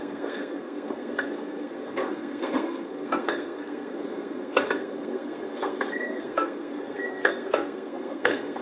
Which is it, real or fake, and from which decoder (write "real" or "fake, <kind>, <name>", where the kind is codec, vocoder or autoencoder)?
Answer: fake, codec, SNAC